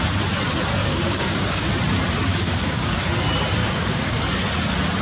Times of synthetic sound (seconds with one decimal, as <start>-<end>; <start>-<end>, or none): 0.8-1.7; 2.3-3.0; 3.6-4.2